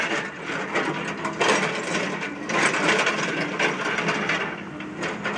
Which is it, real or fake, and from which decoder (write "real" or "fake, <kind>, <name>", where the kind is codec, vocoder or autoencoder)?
fake, vocoder, BigVGAN v2